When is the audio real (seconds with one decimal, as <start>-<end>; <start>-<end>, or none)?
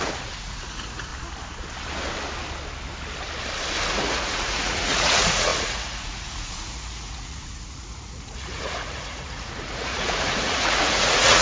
1.1-3.9